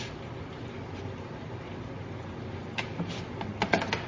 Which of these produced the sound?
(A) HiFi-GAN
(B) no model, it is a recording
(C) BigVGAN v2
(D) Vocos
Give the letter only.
B